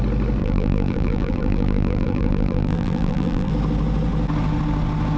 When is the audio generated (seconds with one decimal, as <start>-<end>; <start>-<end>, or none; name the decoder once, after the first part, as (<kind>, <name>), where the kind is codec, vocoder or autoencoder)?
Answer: 0.4-3.5 (vocoder, BigVGAN v2)